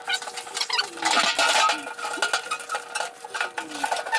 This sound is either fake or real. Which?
real